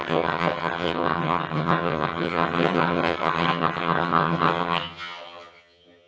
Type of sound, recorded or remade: remade